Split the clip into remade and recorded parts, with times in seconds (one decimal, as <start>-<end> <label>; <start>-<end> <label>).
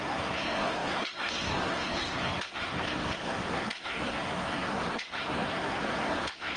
0.0-6.6 remade